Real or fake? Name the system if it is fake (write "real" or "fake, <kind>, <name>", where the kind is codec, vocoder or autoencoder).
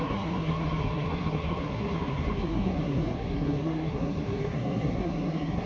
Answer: fake, codec, SNAC